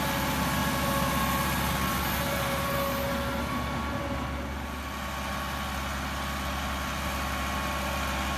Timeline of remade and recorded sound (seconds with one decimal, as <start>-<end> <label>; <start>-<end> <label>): 0.0-8.4 recorded